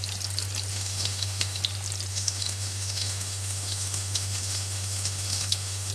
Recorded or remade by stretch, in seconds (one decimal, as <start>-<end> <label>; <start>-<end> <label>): 0.0-0.7 recorded; 0.7-1.6 remade; 1.6-2.1 recorded; 2.1-5.9 remade